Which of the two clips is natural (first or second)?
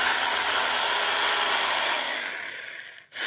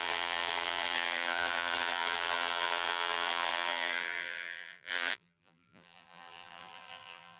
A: first